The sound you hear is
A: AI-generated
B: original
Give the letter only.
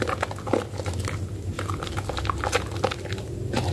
B